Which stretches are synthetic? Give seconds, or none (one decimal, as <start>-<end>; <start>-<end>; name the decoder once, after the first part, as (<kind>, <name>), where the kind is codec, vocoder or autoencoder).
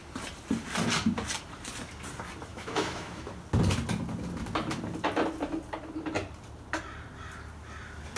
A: 2.5-3.3 (autoencoder, DAC-VAE)